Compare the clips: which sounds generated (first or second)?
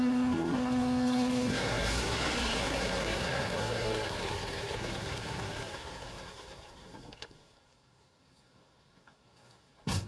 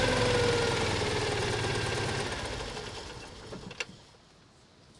first